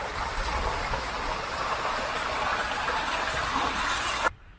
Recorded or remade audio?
recorded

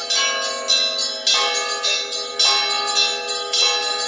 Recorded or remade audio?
recorded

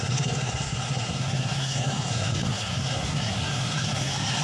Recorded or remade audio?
remade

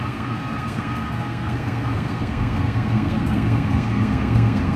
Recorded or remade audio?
remade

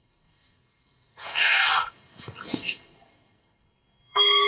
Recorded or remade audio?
remade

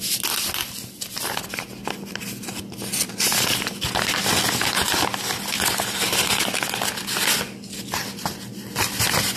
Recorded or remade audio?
recorded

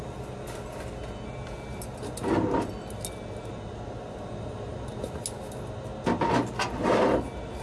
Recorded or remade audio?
recorded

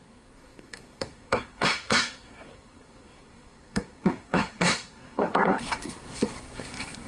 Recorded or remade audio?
remade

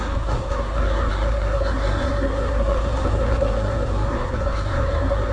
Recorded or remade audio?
remade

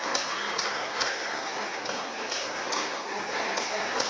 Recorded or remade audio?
remade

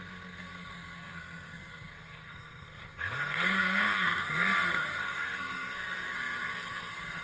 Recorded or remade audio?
remade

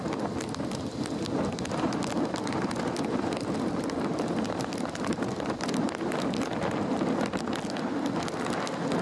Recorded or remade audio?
recorded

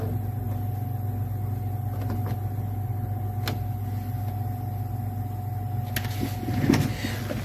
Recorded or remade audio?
recorded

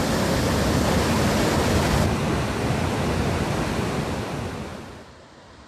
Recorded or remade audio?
recorded